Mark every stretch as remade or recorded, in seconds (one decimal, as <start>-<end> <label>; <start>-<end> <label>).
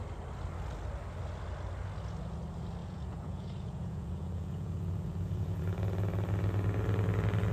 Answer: 0.0-2.8 recorded; 2.8-5.6 remade; 5.6-7.5 recorded